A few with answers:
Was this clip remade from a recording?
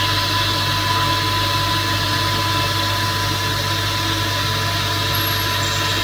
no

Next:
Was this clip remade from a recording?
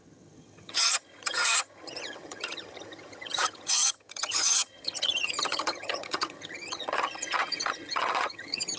yes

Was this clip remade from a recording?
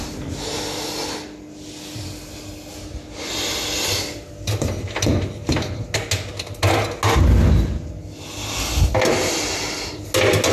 no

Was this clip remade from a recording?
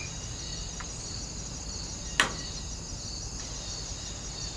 no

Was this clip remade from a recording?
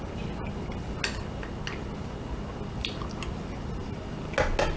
no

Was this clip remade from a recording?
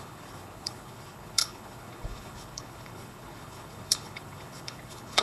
yes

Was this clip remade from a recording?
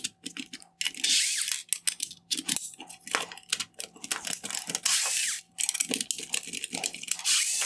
no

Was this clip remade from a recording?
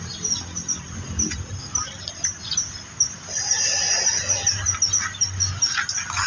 no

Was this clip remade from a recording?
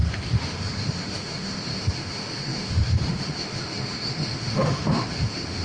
yes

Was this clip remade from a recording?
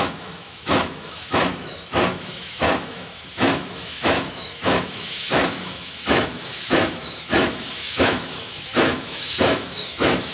yes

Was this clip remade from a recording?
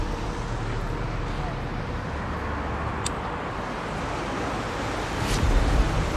no